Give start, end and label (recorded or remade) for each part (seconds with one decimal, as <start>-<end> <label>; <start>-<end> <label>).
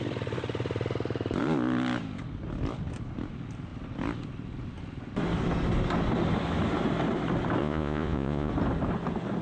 0.0-7.6 recorded; 7.6-8.5 remade; 8.5-9.4 recorded